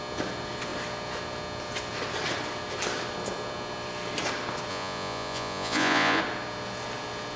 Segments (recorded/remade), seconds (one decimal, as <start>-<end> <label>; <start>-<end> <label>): 0.0-4.7 recorded; 4.7-6.2 remade; 6.2-7.4 recorded